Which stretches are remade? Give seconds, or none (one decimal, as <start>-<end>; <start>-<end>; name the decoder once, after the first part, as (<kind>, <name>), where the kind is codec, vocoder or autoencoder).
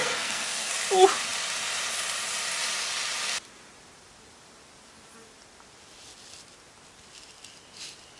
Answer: 0.0-0.7 (codec, SNAC)